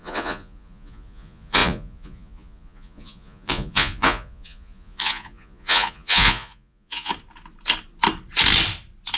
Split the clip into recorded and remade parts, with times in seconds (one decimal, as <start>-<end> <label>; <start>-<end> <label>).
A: 0.0-7.1 remade; 7.1-9.2 recorded